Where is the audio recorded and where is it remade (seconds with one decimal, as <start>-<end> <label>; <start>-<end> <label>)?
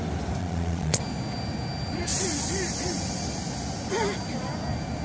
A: 0.0-0.4 recorded; 0.4-1.0 remade; 1.0-5.0 recorded